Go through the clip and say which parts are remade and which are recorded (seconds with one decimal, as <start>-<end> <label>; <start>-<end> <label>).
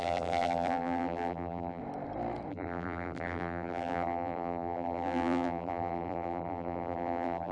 0.0-1.8 remade; 1.8-2.5 recorded; 2.5-7.5 remade